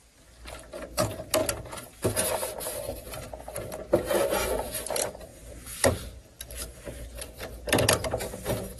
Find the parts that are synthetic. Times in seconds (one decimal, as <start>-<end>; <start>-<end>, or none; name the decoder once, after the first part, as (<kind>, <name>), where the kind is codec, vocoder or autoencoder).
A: none

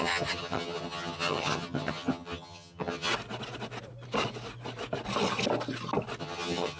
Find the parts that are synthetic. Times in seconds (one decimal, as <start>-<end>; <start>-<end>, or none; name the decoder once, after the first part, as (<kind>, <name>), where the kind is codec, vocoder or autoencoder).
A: 0.0-3.1 (vocoder, HiFi-GAN); 6.2-6.8

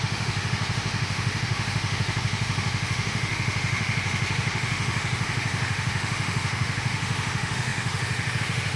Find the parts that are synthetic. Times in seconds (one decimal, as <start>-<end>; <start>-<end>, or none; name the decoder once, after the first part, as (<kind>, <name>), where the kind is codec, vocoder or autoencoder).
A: 0.0-8.8 (autoencoder, DAC-VAE)

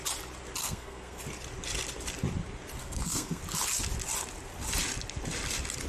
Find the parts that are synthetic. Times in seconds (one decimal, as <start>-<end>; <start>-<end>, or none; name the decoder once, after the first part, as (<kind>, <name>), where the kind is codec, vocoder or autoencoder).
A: 0.6-1.2 (codec, SNAC); 2.8-3.4

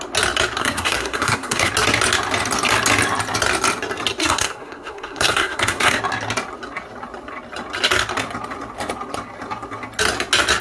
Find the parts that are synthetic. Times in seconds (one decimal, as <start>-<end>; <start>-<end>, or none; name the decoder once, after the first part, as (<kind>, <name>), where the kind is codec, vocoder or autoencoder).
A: 0.6-1.7 (codec, SNAC); 4.2-6.0

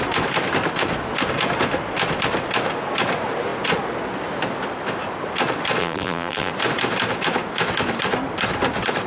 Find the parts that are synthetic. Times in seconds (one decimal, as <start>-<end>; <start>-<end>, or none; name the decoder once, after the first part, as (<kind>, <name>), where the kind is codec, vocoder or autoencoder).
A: 5.8-6.5 (vocoder, BigVGAN v2)

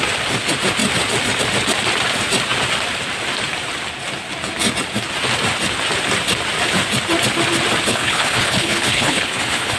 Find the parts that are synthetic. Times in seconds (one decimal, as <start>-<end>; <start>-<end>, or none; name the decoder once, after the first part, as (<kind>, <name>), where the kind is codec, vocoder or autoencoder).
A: 7.9-9.8 (codec, HILCodec)